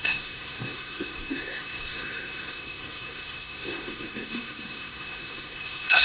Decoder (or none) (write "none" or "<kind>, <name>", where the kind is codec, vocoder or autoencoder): codec, SNAC